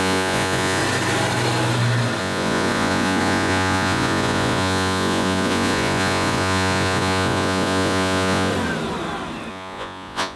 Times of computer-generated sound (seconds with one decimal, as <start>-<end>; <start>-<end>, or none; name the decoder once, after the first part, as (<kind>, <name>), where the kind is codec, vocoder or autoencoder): 0.0-0.8 (vocoder, Vocos); 2.2-8.5; 9.5-10.4